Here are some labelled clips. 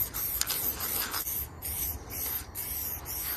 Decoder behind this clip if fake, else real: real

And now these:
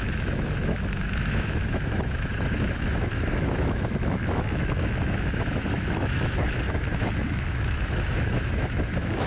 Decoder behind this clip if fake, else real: fake, autoencoder, DAC-VAE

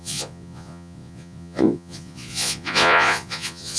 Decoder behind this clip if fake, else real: fake, vocoder, Vocos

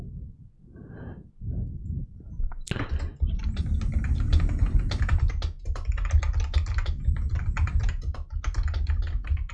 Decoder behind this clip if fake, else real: real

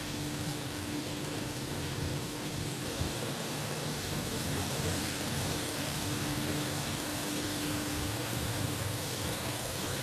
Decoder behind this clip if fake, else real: fake, codec, DAC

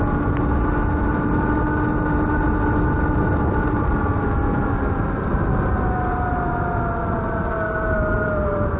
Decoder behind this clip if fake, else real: real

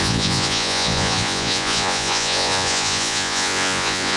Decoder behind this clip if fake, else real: fake, vocoder, Vocos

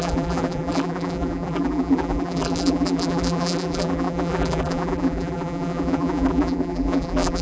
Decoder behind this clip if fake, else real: fake, vocoder, BigVGAN v2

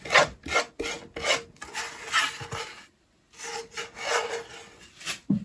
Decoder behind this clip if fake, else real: real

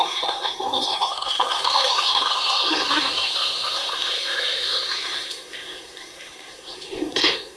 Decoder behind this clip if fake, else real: fake, codec, SNAC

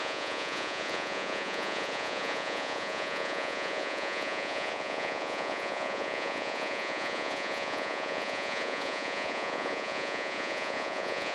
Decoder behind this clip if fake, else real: fake, vocoder, Vocos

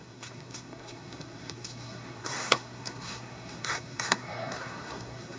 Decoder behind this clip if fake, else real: fake, codec, SNAC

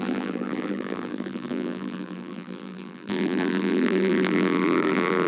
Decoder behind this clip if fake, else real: fake, vocoder, BigVGAN v2